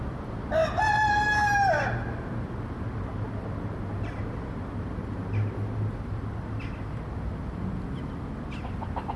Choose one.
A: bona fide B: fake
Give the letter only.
A